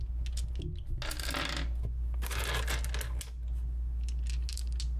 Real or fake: real